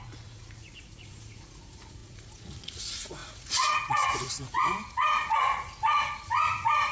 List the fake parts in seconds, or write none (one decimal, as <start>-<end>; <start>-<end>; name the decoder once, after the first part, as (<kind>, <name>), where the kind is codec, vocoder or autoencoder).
0.0-6.9 (vocoder, Vocos)

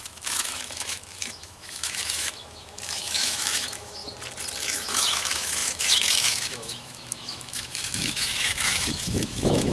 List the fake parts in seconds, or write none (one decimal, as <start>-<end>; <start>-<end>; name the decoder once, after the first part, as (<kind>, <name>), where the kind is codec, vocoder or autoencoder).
0.0-4.0 (autoencoder, DAC-VAE); 4.6-9.7

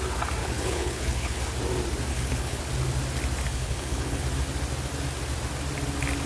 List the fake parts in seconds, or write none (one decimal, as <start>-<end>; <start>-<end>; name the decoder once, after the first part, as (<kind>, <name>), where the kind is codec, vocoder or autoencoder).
0.4-1.4 (codec, HILCodec); 2.1-2.6; 3.5-4.2

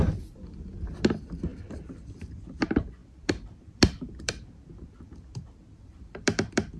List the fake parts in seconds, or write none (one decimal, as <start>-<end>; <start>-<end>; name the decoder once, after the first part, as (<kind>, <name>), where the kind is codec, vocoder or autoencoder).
0.0-6.8 (vocoder, BigVGAN v2)

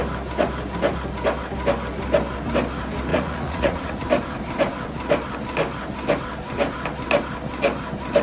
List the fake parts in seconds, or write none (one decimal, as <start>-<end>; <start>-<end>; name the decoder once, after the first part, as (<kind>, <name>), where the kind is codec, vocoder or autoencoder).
3.1-4.0 (vocoder, Vocos)